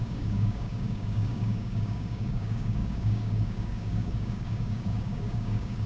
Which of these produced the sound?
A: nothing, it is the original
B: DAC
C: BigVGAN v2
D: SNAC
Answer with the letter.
B